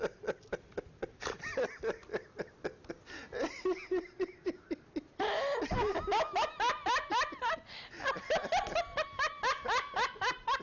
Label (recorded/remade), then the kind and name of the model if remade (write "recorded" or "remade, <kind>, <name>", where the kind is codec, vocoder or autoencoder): recorded